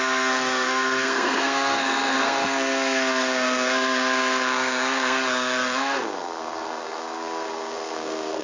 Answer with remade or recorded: remade